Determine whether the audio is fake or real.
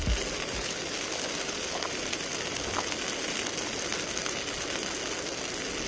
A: real